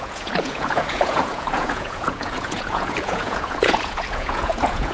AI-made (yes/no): yes